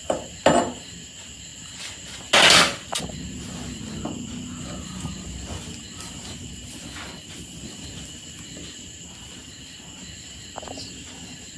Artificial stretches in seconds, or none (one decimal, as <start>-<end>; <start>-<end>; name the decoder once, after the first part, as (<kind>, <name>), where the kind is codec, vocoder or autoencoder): none